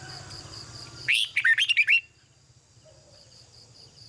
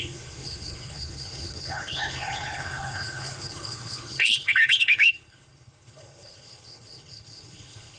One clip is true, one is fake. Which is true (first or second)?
first